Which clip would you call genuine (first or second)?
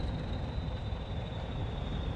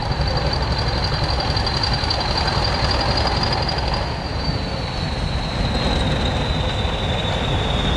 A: second